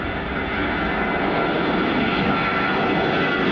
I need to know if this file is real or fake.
real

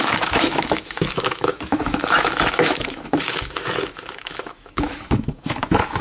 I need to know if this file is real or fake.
fake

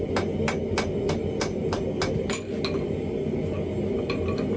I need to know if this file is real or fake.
real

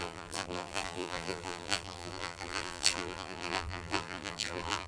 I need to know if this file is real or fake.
fake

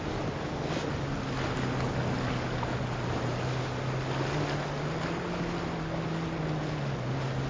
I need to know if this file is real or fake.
real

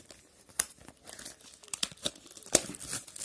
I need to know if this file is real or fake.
real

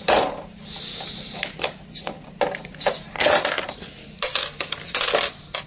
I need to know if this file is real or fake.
real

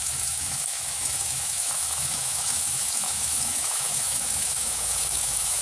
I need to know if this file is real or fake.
fake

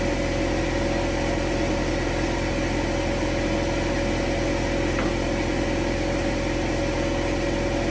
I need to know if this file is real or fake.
real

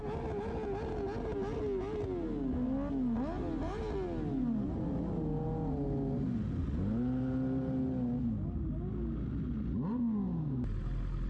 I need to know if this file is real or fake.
real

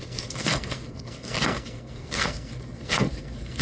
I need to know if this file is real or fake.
fake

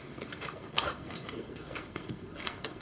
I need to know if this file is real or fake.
fake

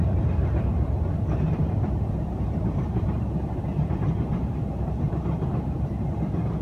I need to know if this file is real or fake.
fake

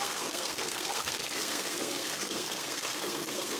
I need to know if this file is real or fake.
fake